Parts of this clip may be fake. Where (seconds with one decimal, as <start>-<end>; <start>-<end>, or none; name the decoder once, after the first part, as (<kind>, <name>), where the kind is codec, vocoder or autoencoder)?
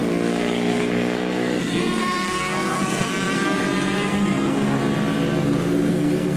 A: 0.0-4.8 (codec, SNAC); 5.9-6.4